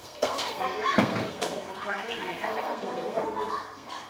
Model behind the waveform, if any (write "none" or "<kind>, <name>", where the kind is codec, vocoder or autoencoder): codec, SNAC